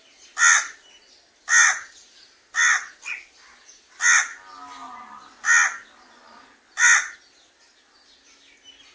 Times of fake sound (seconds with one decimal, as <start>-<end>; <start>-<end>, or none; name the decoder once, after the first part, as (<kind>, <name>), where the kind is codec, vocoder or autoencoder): none